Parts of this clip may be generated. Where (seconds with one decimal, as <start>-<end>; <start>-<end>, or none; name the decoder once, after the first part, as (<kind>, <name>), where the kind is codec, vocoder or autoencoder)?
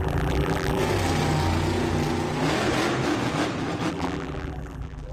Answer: 0.0-0.8 (vocoder, BigVGAN v2); 3.9-5.1